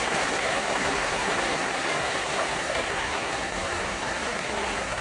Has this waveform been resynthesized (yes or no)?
yes